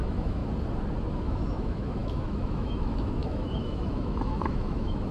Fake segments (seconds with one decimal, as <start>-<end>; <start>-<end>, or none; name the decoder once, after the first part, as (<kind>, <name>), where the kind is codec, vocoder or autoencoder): 0.0-0.4 (autoencoder, DAC-VAE); 1.1-5.1